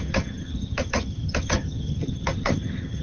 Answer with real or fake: fake